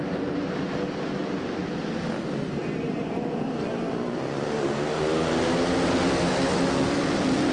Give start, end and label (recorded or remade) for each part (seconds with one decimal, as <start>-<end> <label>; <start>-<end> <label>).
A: 0.0-7.5 recorded